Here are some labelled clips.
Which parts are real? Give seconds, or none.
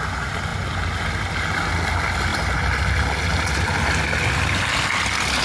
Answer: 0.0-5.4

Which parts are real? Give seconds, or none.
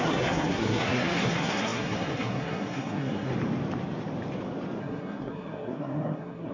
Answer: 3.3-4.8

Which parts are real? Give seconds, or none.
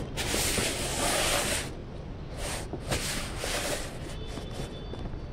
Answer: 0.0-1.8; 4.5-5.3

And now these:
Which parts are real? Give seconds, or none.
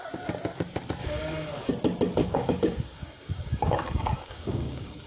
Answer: 0.0-1.0; 1.7-2.2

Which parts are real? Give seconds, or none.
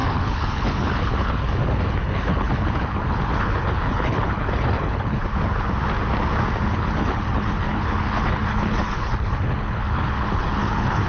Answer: 5.2-6.7